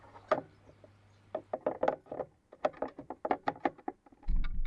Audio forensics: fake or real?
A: real